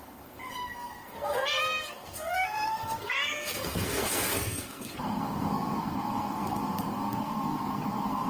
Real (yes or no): no